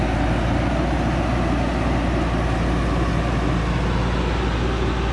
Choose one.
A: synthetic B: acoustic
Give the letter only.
B